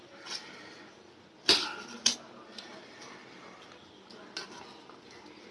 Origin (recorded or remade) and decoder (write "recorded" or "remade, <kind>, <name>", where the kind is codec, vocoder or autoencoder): recorded